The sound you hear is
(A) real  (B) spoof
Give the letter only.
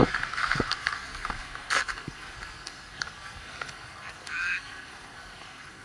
B